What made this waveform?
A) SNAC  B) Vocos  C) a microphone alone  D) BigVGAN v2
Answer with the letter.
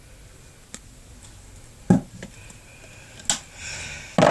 C